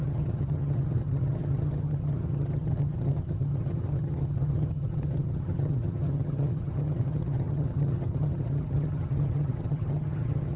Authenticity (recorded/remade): remade